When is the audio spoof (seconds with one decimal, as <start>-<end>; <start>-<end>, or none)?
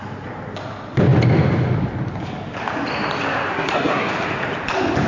3.5-4.1